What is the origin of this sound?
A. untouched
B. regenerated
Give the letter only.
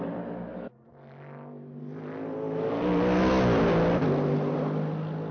A